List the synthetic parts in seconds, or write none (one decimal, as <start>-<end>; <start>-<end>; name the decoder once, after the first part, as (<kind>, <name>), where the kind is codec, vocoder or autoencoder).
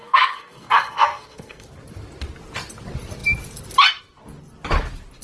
0.0-1.7 (codec, SNAC)